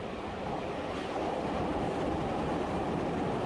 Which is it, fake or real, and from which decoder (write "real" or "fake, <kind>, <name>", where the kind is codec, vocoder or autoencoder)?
real